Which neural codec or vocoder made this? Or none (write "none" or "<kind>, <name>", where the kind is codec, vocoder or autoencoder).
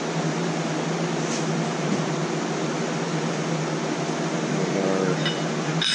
none